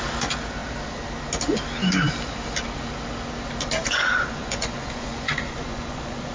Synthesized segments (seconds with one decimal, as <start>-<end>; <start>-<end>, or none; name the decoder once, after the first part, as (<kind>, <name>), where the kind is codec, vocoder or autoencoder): 3.8-6.3 (vocoder, Vocos)